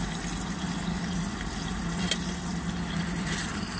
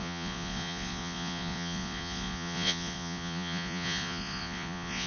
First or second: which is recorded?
first